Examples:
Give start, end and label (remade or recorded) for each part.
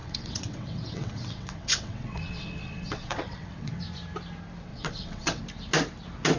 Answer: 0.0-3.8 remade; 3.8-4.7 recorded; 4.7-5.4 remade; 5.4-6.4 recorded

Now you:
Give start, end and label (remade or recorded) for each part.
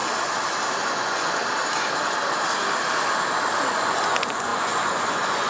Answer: 0.0-0.8 recorded; 0.8-1.4 remade; 1.4-3.7 recorded; 3.7-5.5 remade